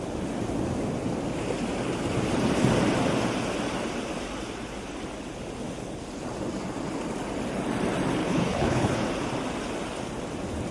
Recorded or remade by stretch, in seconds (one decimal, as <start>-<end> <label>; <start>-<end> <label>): 0.0-8.2 recorded; 8.2-9.0 remade; 9.0-10.7 recorded